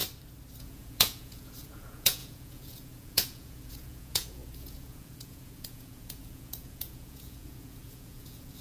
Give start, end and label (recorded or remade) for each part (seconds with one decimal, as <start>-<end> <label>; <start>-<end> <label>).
0.0-0.6 recorded; 0.6-8.6 remade